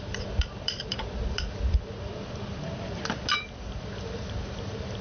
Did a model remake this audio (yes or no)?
yes